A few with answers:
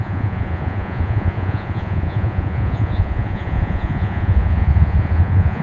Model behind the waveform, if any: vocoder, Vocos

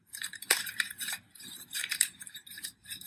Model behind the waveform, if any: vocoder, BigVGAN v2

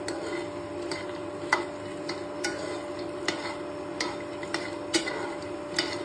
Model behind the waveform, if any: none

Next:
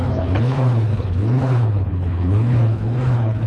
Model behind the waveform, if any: codec, HILCodec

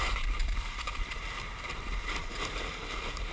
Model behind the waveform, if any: vocoder, BigVGAN v2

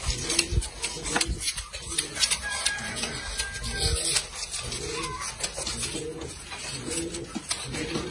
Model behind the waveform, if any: none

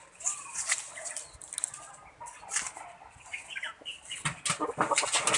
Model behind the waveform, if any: none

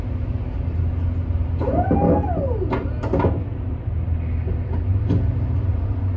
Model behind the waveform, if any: none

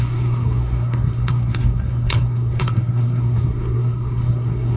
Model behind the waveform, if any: codec, SNAC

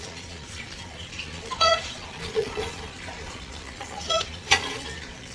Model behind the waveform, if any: vocoder, Vocos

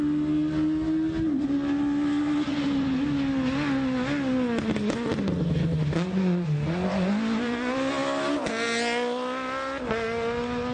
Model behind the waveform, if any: none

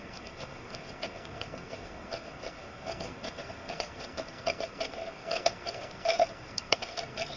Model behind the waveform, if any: codec, SNAC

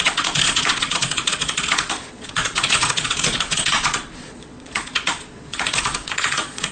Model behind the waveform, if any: vocoder, Vocos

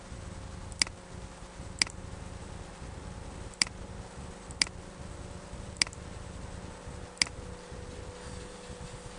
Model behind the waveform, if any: none